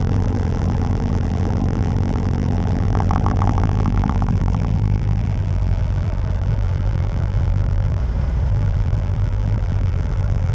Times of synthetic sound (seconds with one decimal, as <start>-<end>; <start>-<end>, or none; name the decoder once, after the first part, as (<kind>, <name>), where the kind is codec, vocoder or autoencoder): 0.0-8.0 (vocoder, BigVGAN v2); 8.5-10.5